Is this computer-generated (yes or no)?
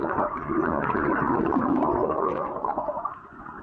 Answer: yes